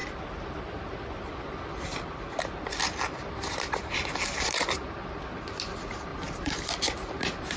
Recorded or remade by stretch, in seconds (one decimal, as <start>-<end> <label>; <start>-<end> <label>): 0.0-4.6 remade; 4.6-6.1 recorded; 6.1-7.6 remade